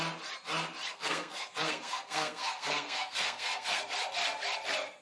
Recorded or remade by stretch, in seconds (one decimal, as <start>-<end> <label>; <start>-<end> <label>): 0.0-0.9 recorded; 0.9-3.8 remade; 3.8-5.0 recorded